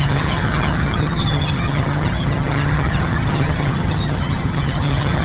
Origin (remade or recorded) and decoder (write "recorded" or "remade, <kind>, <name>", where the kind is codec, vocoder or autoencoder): remade, vocoder, HiFi-GAN